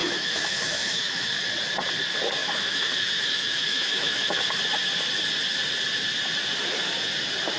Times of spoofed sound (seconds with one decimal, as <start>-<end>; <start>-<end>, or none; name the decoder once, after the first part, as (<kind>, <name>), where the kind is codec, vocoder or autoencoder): 0.0-1.3 (autoencoder, DAC-VAE); 2.4-4.4